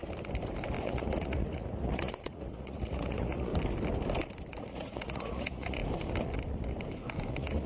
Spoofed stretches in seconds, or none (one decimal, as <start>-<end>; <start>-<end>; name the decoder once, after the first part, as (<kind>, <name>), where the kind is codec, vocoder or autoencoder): 0.8-3.5 (vocoder, Vocos); 4.5-5.8; 7.3-7.7